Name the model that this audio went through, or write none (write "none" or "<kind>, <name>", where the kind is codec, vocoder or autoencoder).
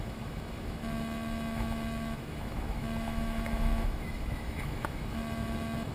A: autoencoder, DAC-VAE